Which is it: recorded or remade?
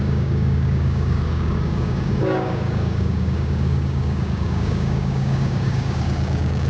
remade